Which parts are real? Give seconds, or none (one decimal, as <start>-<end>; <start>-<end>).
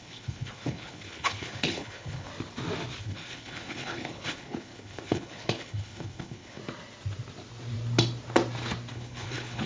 2.3-3.0; 6.6-8.9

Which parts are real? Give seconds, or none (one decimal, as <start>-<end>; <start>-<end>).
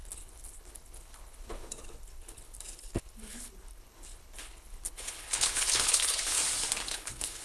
6.4-6.9